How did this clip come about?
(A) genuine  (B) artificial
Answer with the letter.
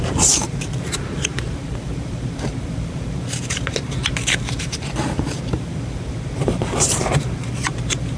B